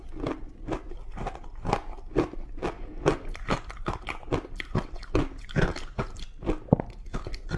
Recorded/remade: recorded